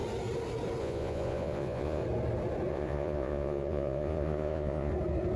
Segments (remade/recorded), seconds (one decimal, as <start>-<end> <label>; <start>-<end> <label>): 0.0-0.8 recorded; 0.8-2.0 remade; 2.0-2.7 recorded; 2.7-4.9 remade; 4.9-5.4 recorded